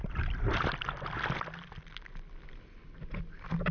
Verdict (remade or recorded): recorded